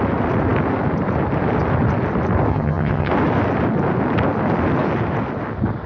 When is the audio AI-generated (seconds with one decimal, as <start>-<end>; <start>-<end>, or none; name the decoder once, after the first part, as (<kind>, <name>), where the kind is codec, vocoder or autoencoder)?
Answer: 2.5-3.1 (vocoder, HiFi-GAN)